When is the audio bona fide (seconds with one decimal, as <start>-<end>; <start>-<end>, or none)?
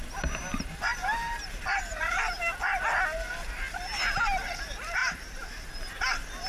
0.0-0.9; 2.4-5.0; 5.7-6.5